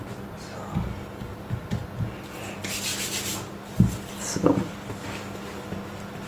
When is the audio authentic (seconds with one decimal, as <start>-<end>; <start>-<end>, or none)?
none